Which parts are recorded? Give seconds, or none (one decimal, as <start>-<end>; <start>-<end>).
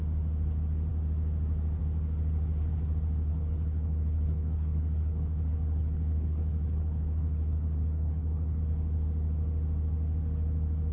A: 0.0-3.3; 8.6-10.9